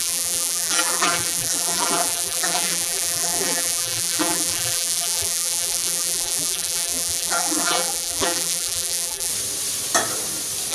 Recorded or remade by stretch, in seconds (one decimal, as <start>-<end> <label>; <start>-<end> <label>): 0.0-9.3 remade; 9.3-10.7 recorded